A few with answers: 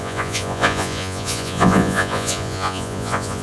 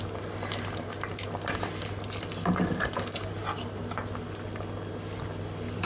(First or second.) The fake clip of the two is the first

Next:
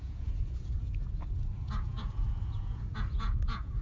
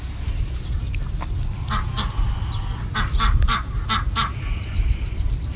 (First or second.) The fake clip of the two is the first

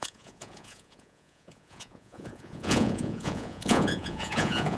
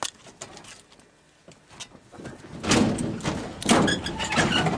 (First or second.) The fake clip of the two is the first